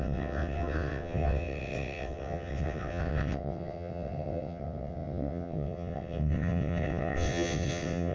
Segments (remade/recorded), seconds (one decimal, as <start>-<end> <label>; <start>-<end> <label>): 0.0-8.1 remade